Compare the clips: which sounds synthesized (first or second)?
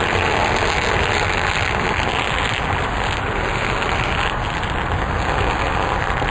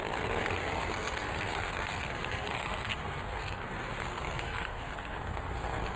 second